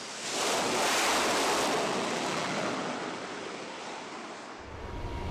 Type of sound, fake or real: real